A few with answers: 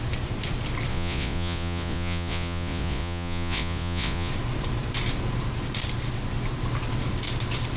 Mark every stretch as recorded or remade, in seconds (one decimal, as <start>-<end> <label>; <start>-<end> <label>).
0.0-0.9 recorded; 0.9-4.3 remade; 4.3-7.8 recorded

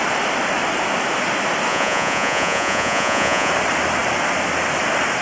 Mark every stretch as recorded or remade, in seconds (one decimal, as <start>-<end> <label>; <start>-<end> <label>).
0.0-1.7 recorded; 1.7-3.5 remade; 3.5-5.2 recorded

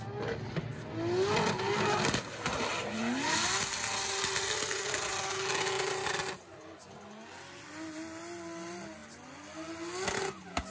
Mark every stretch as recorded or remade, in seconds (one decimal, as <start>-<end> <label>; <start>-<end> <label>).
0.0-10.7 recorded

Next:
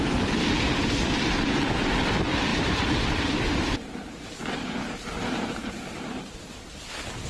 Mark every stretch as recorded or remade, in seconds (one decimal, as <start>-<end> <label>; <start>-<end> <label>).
0.0-2.5 recorded; 2.5-4.4 remade; 4.4-7.3 recorded

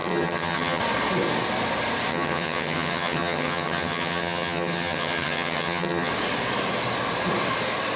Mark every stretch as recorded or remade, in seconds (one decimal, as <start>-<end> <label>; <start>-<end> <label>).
0.0-0.8 remade; 0.8-2.1 recorded; 2.1-6.1 remade; 6.1-8.0 recorded